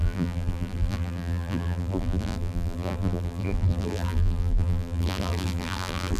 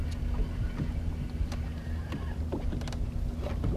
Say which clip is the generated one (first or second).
first